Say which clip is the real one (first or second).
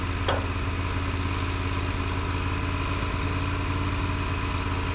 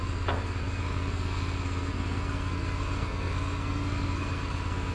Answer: first